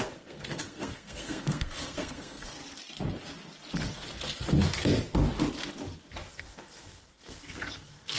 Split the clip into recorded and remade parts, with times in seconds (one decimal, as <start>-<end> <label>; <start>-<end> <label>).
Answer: 0.0-2.6 remade; 2.6-6.3 recorded; 6.3-8.2 remade